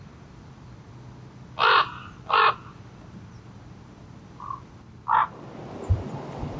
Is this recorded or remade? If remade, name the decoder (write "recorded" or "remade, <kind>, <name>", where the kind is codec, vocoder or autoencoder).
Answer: recorded